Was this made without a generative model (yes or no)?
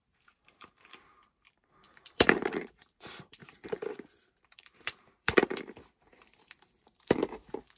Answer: no